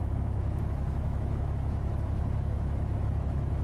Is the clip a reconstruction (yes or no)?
yes